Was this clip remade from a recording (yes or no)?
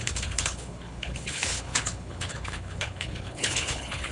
yes